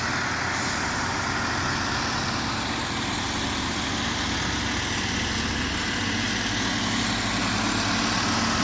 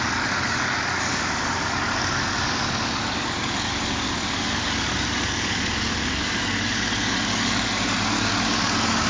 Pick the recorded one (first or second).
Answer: first